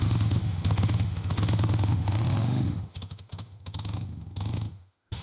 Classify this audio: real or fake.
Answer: fake